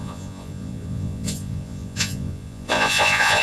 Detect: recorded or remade remade